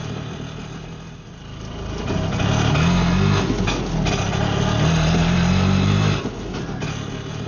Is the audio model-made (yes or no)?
no